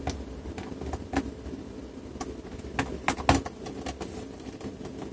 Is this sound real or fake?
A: real